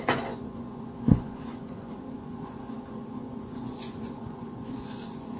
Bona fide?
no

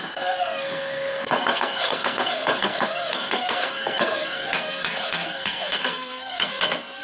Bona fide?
no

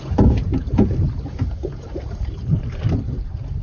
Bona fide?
no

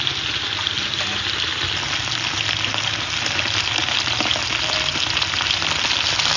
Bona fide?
yes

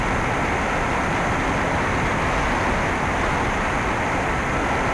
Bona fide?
no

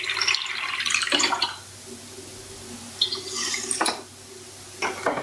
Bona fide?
yes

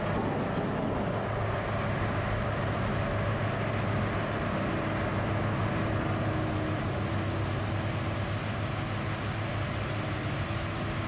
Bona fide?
yes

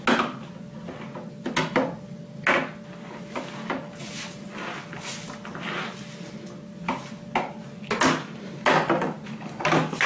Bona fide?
yes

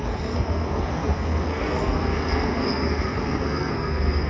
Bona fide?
no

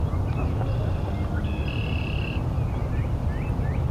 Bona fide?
yes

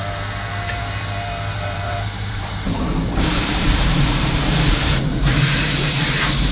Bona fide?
no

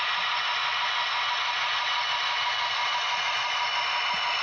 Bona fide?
yes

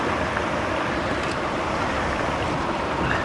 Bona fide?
yes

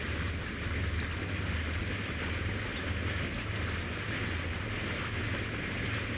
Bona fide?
yes